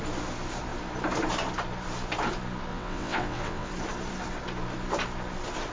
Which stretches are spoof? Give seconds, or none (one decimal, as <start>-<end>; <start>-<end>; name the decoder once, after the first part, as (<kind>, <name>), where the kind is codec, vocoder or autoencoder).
2.7-3.7 (vocoder, WaveNeXt)